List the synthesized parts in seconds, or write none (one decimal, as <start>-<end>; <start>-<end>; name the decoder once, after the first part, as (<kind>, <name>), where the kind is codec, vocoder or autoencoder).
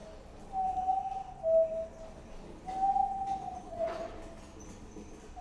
3.0-4.1 (vocoder, Vocos)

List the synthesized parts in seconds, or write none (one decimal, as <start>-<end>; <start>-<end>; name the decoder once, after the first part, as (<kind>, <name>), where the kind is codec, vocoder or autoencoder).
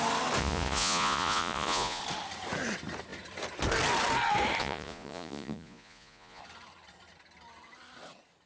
0.4-2.0 (vocoder, Vocos); 4.6-6.4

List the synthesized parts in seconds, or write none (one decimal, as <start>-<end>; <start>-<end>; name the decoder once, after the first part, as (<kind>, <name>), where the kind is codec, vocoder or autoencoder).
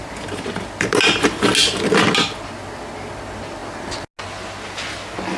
none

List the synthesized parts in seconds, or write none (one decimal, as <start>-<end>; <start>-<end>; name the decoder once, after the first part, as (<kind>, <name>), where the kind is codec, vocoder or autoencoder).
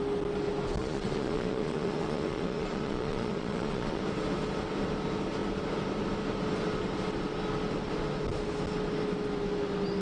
0.8-4.0 (vocoder, Vocos)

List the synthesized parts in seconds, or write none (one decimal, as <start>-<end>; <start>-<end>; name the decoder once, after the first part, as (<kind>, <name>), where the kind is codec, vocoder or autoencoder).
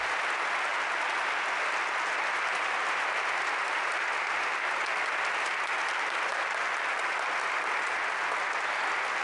none